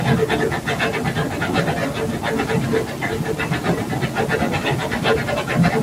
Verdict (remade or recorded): recorded